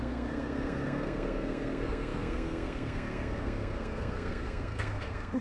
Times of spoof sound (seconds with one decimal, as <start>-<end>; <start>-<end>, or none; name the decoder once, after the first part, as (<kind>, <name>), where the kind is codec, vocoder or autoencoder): 0.0-5.4 (codec, SNAC)

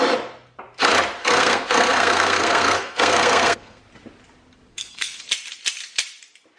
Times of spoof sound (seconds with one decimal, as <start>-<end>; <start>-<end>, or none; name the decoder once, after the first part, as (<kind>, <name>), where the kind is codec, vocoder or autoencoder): 1.2-3.8 (codec, SNAC); 4.7-5.2

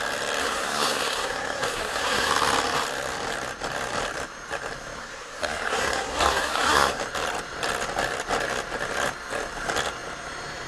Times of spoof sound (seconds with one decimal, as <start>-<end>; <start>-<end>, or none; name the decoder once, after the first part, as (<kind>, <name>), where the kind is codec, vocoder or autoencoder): 0.4-2.3 (codec, SNAC); 5.0-7.0

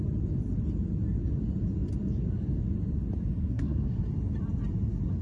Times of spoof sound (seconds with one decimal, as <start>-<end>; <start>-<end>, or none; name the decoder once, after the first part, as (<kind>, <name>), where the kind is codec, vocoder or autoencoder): 3.4-4.0 (codec, SNAC)